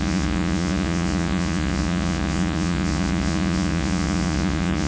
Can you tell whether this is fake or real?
fake